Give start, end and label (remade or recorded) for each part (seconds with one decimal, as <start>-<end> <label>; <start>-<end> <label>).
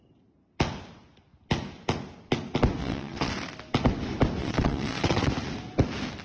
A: 0.0-2.8 recorded; 2.8-3.3 remade; 3.3-4.4 recorded; 4.4-5.3 remade; 5.3-6.2 recorded